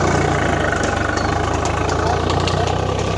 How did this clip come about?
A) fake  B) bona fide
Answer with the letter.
B